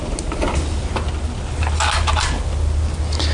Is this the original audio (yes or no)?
yes